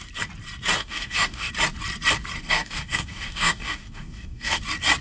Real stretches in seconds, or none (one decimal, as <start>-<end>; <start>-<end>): 0.0-0.8; 1.5-2.4; 4.6-5.0